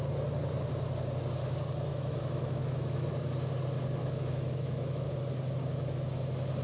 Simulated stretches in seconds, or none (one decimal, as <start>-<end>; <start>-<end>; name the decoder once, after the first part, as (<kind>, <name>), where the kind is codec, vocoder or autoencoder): 1.9-3.1 (autoencoder, DAC-VAE); 4.0-5.1